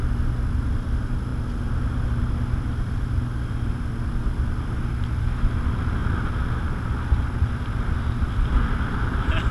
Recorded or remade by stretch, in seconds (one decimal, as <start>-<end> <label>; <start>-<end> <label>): 0.0-9.5 recorded